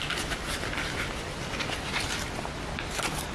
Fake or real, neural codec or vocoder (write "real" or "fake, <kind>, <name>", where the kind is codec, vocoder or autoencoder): real